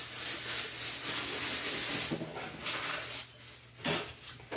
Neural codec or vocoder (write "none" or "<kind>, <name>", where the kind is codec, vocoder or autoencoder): none